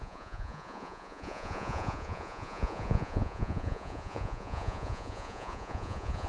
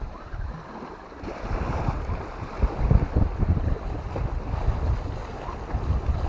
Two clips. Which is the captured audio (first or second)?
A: second